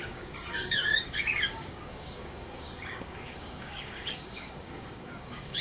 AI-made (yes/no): yes